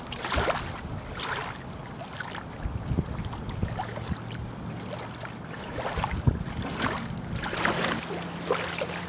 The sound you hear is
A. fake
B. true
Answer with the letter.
B